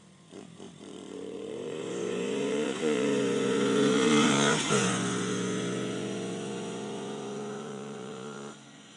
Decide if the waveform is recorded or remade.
remade